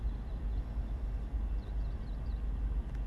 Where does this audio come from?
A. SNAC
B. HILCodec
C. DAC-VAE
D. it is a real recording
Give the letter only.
D